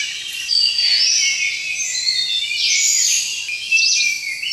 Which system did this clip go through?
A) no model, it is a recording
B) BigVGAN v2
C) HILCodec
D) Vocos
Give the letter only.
A